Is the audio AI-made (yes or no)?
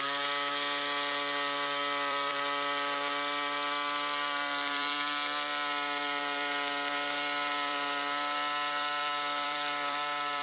yes